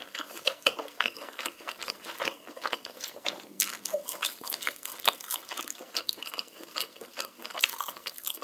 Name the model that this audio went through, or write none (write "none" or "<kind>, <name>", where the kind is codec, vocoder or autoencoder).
codec, SNAC